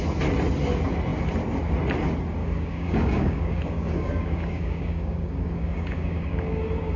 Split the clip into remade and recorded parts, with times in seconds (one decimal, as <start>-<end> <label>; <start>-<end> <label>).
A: 0.0-2.4 recorded; 2.4-6.6 remade; 6.6-7.0 recorded